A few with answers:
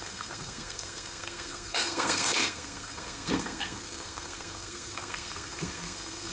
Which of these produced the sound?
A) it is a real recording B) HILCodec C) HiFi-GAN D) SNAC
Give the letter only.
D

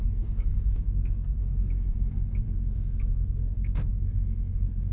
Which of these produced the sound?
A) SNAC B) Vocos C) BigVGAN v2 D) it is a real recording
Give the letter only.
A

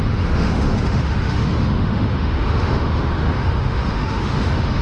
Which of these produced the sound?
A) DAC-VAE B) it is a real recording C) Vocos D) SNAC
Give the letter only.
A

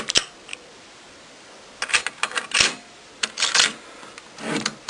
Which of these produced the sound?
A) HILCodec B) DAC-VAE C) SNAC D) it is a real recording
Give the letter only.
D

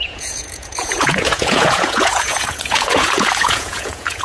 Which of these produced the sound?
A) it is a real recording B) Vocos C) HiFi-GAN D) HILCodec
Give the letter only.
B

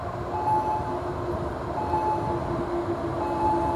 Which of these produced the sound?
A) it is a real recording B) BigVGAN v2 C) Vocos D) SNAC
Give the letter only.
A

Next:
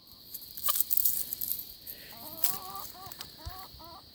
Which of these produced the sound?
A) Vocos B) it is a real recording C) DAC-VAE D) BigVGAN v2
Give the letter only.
B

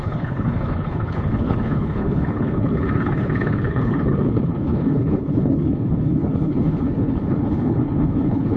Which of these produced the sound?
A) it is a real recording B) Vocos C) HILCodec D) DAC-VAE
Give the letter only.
C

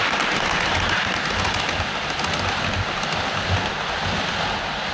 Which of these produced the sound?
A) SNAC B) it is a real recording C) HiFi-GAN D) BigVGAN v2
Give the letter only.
B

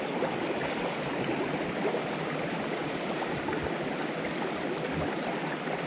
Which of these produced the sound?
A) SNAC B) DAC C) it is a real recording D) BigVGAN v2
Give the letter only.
C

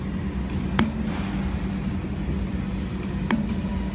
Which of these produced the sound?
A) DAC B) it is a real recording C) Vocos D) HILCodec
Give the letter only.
B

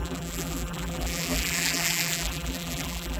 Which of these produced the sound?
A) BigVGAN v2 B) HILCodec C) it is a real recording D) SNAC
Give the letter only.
A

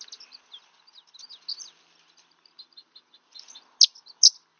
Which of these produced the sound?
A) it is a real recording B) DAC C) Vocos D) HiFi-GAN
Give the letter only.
A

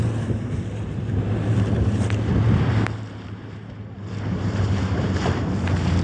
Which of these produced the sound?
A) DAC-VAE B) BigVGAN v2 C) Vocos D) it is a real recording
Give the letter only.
B